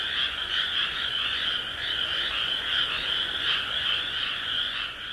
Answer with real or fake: fake